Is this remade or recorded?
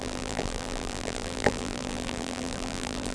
remade